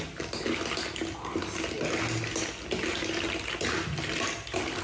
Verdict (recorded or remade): recorded